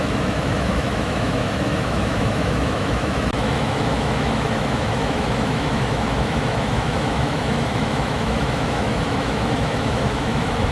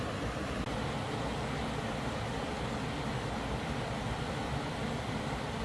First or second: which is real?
second